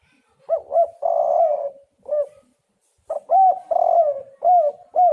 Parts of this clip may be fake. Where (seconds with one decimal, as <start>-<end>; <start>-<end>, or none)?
none